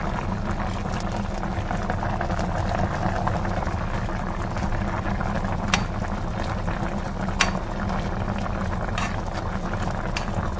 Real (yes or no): yes